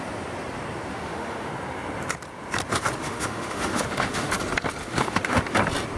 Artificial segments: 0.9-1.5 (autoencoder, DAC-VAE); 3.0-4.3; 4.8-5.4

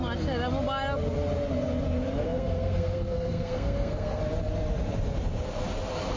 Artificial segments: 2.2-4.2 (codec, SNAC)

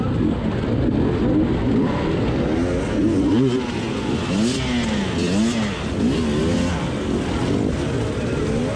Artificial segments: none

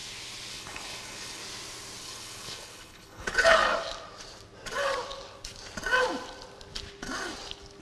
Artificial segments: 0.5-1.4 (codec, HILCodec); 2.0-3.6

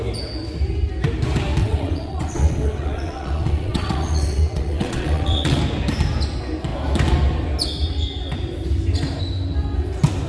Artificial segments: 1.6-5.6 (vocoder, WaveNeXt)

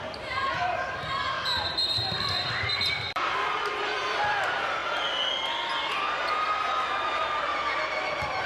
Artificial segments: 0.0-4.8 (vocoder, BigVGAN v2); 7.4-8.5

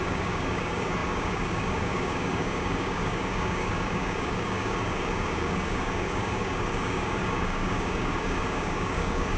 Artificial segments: 0.0-9.4 (codec, DAC)

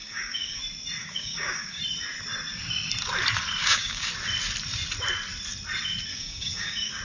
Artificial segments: 0.0-0.6 (codec, DAC); 1.0-1.8; 3.6-4.1; 6.1-7.0